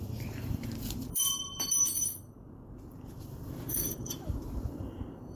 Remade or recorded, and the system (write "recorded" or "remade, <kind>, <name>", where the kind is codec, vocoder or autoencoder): remade, vocoder, BigVGAN v2